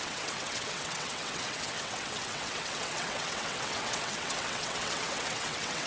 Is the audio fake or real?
fake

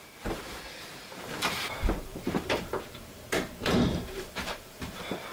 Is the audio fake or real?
fake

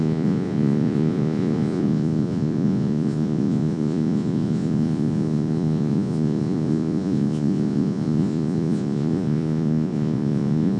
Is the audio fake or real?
fake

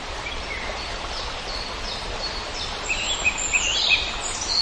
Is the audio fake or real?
real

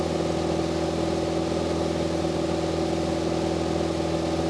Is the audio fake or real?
real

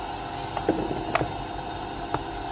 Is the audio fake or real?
real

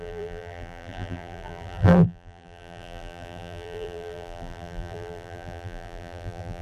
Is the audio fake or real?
fake